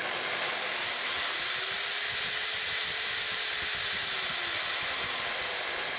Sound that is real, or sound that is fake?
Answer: real